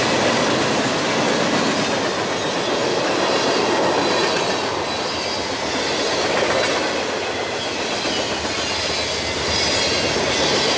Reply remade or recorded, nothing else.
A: recorded